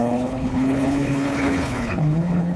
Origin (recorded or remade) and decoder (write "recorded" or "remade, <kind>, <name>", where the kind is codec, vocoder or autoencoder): remade, codec, HILCodec